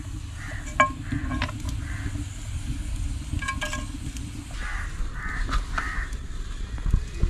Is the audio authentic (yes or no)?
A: yes